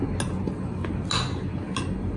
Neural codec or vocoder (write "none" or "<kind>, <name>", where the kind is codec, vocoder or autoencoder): none